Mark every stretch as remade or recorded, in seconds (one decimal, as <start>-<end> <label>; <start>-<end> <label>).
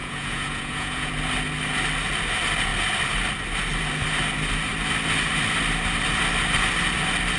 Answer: 0.0-1.1 remade; 1.1-7.4 recorded